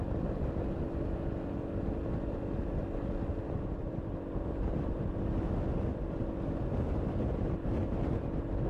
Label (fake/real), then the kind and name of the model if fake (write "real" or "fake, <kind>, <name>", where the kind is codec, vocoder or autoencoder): real